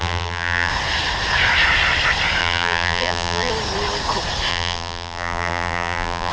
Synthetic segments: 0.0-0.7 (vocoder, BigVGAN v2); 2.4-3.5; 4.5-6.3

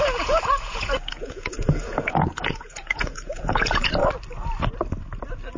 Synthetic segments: 0.0-4.0 (vocoder, Vocos)

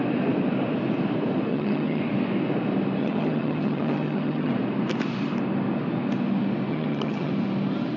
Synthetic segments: 1.5-2.0 (vocoder, HiFi-GAN); 3.0-4.5; 6.7-7.3